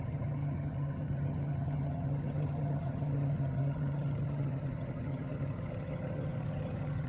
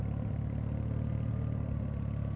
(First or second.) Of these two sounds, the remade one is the first